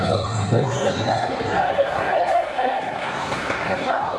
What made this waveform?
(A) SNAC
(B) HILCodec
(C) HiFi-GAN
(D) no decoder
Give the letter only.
A